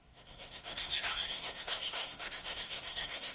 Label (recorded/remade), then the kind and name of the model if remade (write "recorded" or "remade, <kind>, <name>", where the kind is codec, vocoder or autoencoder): remade, codec, SNAC